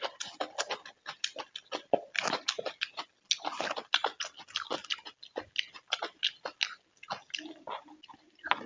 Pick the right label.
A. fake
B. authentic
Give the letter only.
B